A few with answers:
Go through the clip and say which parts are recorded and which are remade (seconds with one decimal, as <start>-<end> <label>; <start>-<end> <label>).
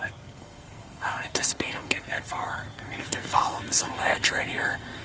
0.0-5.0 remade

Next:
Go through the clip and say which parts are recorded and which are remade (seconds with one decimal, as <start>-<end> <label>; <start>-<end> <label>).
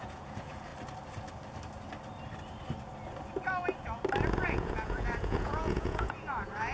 0.0-0.7 remade; 0.7-4.4 recorded; 4.4-6.7 remade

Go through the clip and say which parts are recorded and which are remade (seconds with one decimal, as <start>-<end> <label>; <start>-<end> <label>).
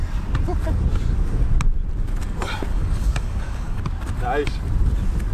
0.0-2.7 recorded; 2.7-3.8 remade; 3.8-5.3 recorded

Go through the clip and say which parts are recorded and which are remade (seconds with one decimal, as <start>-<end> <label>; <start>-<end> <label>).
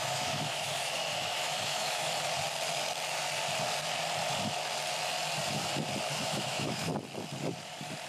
0.0-2.1 remade; 2.1-6.2 recorded; 6.2-6.9 remade; 6.9-8.1 recorded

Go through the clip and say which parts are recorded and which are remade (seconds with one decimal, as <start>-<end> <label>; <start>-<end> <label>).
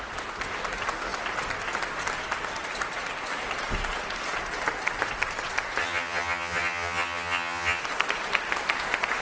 0.0-5.8 recorded; 5.8-7.8 remade; 7.8-9.2 recorded